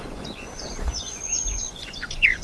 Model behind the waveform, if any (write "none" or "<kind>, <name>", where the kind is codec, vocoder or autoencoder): vocoder, Vocos